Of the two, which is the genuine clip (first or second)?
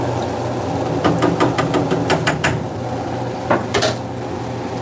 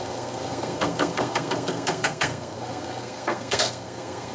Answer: first